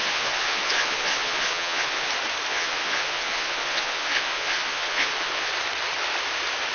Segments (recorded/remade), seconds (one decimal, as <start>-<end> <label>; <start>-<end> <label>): 0.0-2.1 remade; 2.1-2.5 recorded; 2.5-5.5 remade; 5.5-6.7 recorded

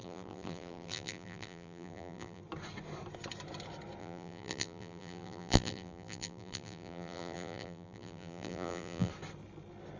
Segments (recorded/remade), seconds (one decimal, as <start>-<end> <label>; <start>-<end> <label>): 0.0-2.4 remade; 2.4-4.0 recorded; 4.0-9.1 remade; 9.1-10.0 recorded

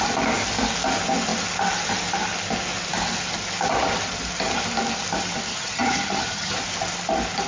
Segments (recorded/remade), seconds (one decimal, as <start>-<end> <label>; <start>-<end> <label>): 0.0-5.5 recorded; 5.5-6.6 remade; 6.6-7.5 recorded

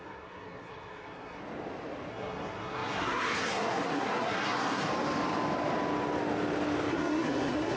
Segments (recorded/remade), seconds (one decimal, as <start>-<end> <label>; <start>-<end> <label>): 0.0-1.4 remade; 1.4-2.1 recorded; 2.1-4.9 remade; 4.9-6.9 recorded; 6.9-7.8 remade

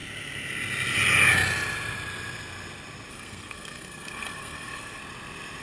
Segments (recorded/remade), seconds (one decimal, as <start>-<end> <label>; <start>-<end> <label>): 0.0-3.1 recorded; 3.1-5.0 remade; 5.0-5.6 recorded

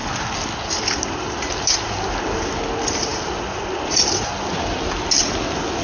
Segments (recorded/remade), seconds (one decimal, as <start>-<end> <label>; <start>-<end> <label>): 0.0-5.8 recorded

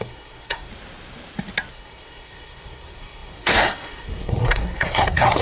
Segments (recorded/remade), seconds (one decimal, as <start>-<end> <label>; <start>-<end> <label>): 0.0-0.7 remade; 0.7-1.7 recorded; 1.7-5.4 remade